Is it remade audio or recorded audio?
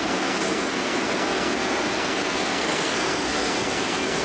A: remade